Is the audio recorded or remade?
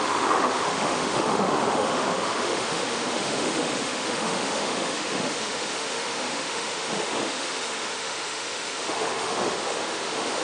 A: remade